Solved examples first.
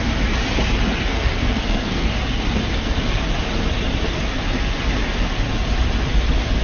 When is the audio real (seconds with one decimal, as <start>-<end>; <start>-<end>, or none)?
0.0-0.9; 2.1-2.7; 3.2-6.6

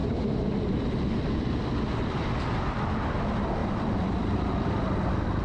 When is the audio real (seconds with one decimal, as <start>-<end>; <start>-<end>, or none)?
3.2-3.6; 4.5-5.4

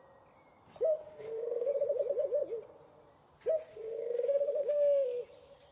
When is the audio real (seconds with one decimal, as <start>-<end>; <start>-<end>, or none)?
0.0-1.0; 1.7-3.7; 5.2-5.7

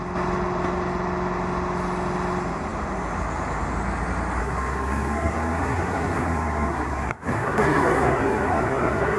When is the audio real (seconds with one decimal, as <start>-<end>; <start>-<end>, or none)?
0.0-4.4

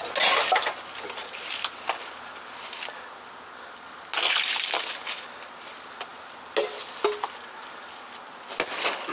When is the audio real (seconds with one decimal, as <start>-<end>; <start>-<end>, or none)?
0.0-9.1

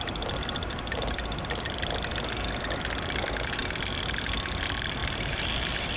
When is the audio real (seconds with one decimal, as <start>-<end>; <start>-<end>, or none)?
0.0-5.0

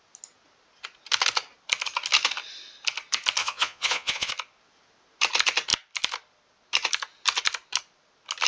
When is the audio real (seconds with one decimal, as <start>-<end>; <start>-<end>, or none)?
0.0-3.4; 4.3-8.5

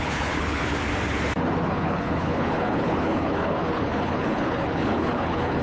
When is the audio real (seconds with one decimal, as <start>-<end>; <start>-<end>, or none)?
0.8-1.7